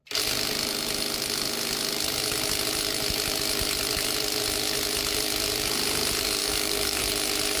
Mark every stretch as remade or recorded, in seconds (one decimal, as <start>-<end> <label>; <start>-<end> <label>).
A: 0.0-6.4 recorded; 6.4-7.0 remade; 7.0-7.6 recorded